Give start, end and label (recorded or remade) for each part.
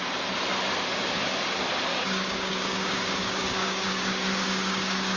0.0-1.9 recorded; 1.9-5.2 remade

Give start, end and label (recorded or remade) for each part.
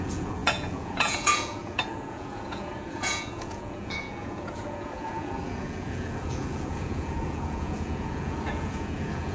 0.0-9.3 remade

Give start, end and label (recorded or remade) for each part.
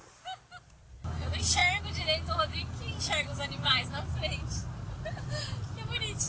0.0-6.3 recorded